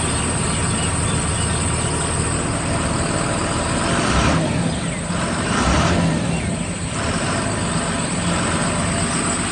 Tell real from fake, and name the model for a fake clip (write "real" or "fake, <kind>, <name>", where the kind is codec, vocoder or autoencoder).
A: real